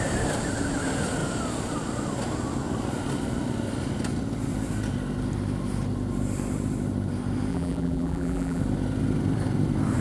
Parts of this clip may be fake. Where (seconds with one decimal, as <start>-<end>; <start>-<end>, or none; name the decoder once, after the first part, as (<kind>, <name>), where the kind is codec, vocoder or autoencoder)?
7.5-8.6 (vocoder, BigVGAN v2)